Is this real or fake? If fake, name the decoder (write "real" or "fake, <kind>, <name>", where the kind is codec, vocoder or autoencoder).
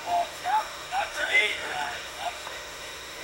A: fake, autoencoder, DAC-VAE